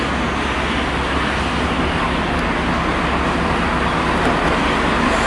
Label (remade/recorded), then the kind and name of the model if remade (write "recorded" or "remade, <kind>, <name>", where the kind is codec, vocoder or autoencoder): recorded